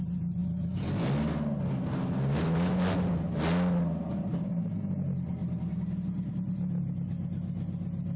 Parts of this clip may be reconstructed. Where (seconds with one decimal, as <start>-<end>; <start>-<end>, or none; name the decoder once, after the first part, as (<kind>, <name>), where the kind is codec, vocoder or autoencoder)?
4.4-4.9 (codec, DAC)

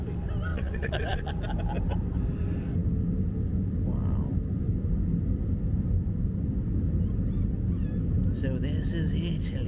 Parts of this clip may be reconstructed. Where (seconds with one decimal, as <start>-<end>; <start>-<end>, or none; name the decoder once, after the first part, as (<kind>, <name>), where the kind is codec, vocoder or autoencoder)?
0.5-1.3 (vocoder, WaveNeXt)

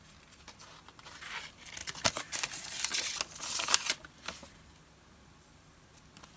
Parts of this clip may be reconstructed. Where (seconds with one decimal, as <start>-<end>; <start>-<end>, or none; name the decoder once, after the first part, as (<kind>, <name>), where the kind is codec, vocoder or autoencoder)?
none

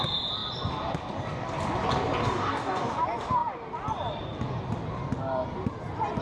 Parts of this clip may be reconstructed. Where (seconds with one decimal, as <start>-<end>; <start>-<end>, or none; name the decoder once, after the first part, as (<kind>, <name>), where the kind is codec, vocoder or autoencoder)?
2.2-2.9 (codec, DAC)